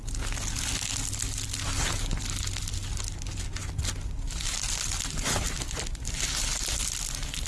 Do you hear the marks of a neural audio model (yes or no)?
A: no